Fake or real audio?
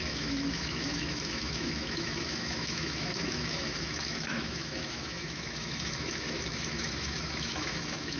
fake